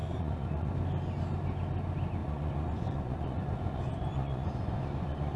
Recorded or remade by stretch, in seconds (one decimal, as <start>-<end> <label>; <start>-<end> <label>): 0.0-0.7 remade; 0.7-2.2 recorded; 2.2-5.4 remade